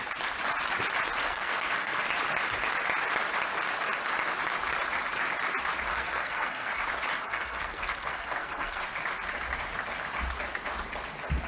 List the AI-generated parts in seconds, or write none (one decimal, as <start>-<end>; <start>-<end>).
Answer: 1.2-2.0; 5.9-6.8; 7.2-8.8